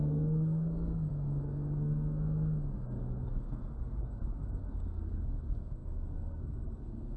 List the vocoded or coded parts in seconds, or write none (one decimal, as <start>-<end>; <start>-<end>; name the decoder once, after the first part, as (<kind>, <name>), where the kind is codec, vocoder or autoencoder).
0.0-7.2 (codec, SNAC)